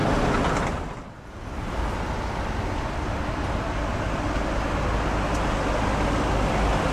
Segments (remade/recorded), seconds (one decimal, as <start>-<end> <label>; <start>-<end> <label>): 0.0-6.9 recorded